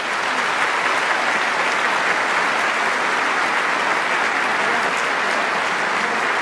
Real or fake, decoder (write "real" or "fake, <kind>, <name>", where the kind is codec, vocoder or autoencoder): real